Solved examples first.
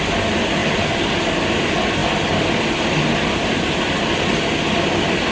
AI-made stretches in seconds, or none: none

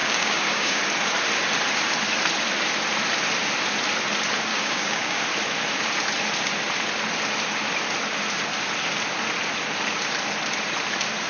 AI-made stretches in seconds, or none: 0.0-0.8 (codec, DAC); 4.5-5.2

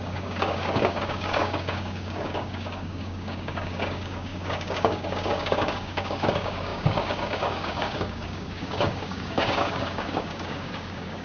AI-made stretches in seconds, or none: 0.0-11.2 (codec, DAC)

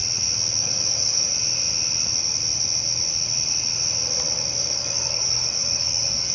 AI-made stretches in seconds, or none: 0.6-1.3 (codec, DAC); 4.6-6.3